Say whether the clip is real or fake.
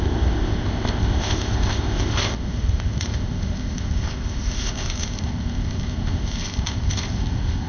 fake